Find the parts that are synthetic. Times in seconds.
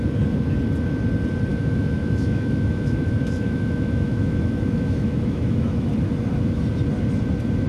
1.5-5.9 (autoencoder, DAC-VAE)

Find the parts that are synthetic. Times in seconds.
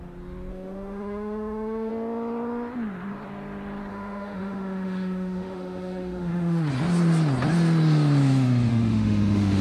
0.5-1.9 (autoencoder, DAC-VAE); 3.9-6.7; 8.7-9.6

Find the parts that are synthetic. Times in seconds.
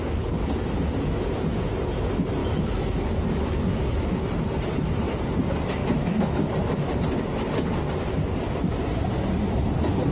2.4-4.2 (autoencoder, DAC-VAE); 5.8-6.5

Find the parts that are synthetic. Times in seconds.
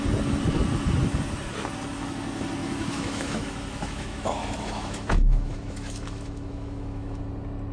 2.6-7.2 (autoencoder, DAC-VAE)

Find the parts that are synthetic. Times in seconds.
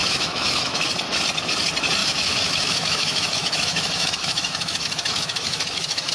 0.0-0.9 (autoencoder, DAC-VAE); 2.0-6.1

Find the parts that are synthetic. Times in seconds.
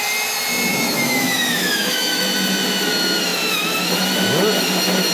0.7-2.2 (autoencoder, DAC-VAE)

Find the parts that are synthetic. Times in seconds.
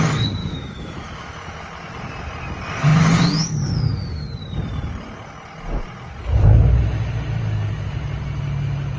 0.4-1.6 (autoencoder, DAC-VAE)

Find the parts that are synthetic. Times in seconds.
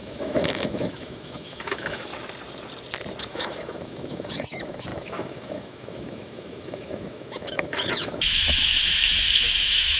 0.0-2.1 (autoencoder, DAC-VAE); 3.2-10.0